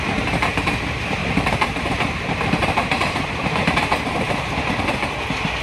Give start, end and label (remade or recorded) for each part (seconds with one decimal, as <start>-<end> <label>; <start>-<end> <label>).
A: 0.0-1.2 recorded; 1.2-4.6 remade; 4.6-5.6 recorded